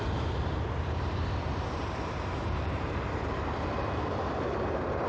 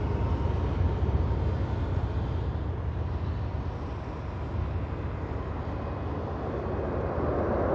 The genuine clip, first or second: second